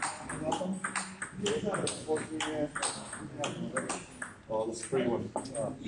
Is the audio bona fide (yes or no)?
yes